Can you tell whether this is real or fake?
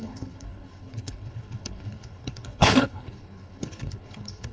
fake